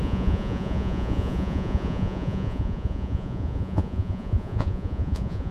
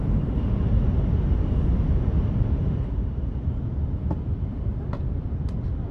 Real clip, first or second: second